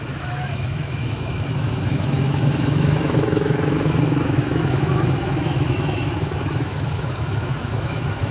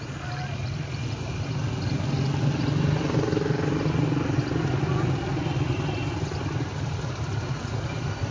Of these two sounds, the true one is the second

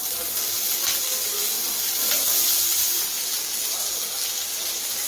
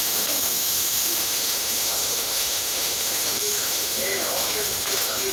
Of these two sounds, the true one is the first